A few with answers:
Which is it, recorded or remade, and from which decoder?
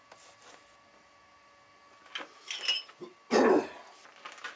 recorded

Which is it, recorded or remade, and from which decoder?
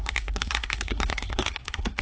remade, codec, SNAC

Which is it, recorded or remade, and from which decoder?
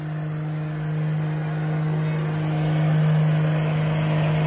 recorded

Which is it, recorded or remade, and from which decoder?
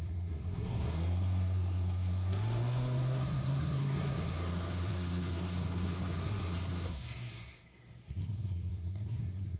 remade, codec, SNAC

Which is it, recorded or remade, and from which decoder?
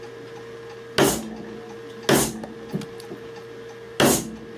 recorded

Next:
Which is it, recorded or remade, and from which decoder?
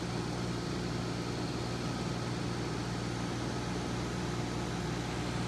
recorded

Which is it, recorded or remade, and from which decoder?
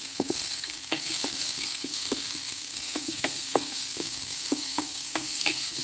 remade, codec, SNAC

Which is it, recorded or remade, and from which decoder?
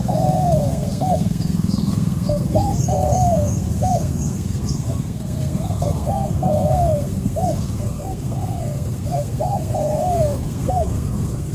remade, codec, SNAC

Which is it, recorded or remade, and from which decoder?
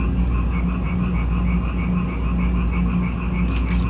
recorded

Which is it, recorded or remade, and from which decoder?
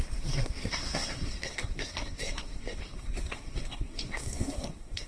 remade, codec, SNAC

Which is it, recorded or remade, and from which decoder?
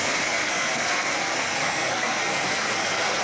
remade, codec, SNAC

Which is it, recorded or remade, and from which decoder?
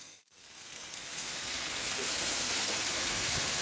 remade, codec, SNAC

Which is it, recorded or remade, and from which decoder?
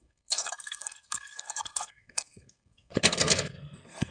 remade, codec, SNAC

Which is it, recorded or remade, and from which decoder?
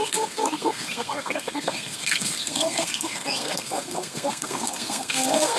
remade, codec, SNAC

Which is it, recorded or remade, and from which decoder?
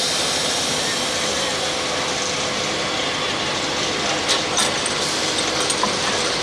recorded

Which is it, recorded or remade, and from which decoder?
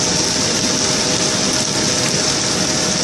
recorded